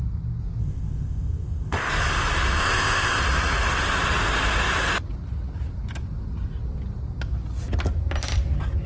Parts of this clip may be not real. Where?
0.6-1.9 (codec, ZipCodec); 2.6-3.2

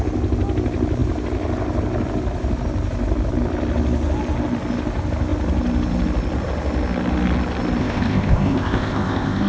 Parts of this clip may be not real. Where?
7.8-9.5 (codec, ZipCodec)

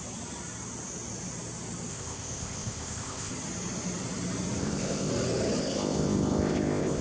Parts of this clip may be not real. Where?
1.9-3.3 (codec, ZipCodec); 4.6-5.1; 5.6-7.0

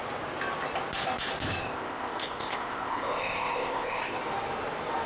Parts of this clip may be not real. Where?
1.6-4.2 (codec, ZipCodec)

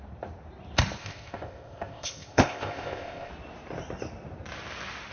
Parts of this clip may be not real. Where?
1.0-3.3 (codec, ZipCodec)